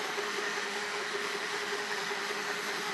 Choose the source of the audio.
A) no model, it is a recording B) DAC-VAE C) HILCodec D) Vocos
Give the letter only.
B